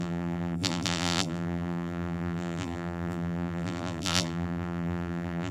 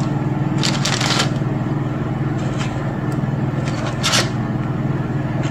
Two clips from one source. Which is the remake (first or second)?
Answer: first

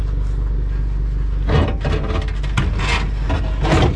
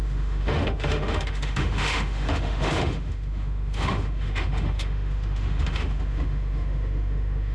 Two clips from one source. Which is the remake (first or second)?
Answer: second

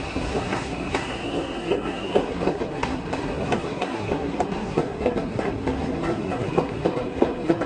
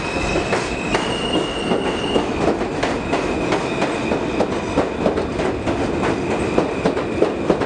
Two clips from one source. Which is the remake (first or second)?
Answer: first